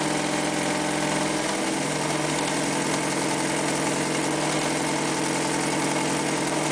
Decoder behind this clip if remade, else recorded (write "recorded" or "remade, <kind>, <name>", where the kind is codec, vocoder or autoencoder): recorded